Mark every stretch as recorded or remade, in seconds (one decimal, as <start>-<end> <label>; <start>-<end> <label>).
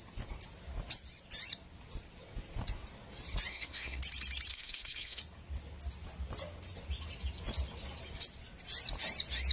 0.0-3.5 recorded; 3.5-4.0 remade; 4.0-4.5 recorded; 4.5-5.2 remade; 5.2-9.5 recorded